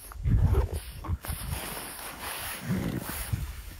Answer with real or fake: fake